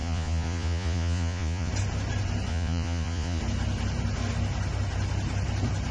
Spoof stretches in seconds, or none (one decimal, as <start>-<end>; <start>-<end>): 0.0-1.7; 2.5-3.4